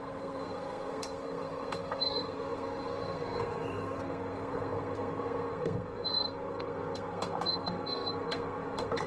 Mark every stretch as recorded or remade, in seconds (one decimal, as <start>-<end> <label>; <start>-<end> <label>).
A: 0.0-9.1 remade

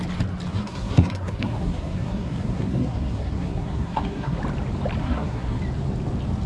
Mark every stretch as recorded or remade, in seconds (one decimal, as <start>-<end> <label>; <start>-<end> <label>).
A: 0.0-0.5 recorded; 0.5-4.4 remade; 4.4-5.0 recorded; 5.0-5.6 remade; 5.6-6.5 recorded

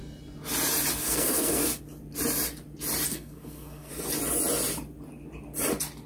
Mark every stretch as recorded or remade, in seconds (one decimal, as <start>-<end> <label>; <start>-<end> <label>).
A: 0.0-1.0 recorded; 1.0-1.8 remade; 1.8-3.1 recorded; 3.1-3.9 remade; 3.9-6.1 recorded

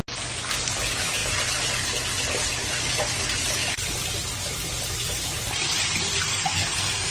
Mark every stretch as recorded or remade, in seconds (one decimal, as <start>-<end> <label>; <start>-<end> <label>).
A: 0.0-6.3 recorded; 6.3-7.1 remade

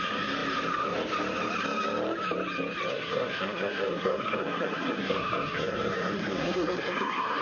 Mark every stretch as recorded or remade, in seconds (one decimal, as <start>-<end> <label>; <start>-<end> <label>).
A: 0.0-2.9 recorded; 2.9-7.4 remade

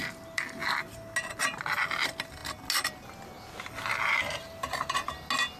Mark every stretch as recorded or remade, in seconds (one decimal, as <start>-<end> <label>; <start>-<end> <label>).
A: 0.0-5.6 recorded